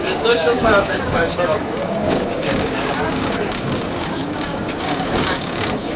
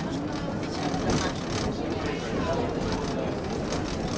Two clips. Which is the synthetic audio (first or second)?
first